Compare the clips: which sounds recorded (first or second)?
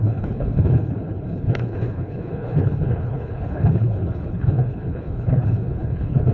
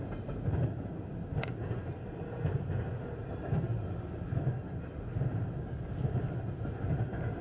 second